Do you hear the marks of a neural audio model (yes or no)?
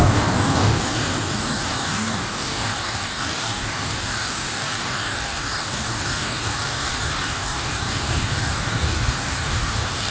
yes